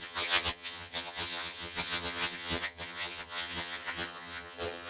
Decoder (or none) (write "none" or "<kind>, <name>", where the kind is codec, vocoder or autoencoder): vocoder, HiFi-GAN